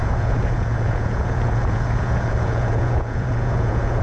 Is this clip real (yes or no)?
no